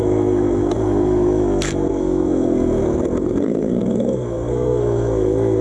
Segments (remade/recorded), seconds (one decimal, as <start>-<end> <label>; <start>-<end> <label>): 0.0-5.6 remade